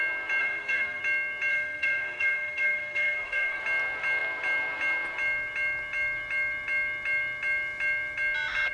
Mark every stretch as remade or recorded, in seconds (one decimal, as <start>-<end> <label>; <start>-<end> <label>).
0.0-0.4 recorded; 0.4-1.0 remade; 1.0-1.5 recorded; 1.5-3.6 remade; 3.6-8.7 recorded